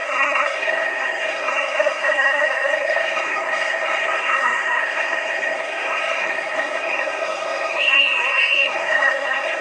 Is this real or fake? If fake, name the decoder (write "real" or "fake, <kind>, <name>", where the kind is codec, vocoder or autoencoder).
fake, codec, SNAC